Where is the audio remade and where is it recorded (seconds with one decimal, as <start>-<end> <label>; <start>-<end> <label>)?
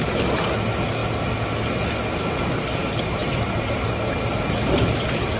0.0-5.4 recorded